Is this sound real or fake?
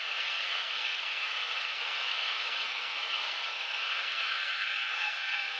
fake